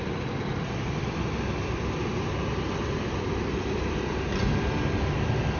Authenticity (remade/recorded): recorded